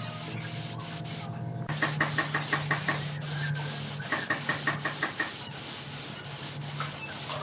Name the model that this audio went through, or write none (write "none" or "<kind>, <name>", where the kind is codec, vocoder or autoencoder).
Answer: none